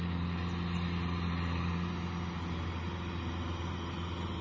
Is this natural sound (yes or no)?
yes